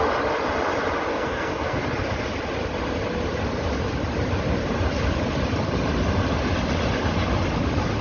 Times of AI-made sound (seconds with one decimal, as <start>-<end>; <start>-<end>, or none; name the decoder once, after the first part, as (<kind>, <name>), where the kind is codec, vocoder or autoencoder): 1.1-1.8 (codec, SNAC)